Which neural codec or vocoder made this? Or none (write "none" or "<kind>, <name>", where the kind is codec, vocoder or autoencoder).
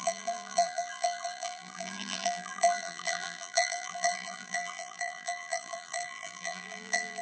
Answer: vocoder, BigVGAN v2